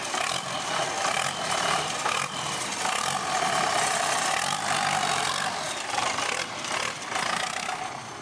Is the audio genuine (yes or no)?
no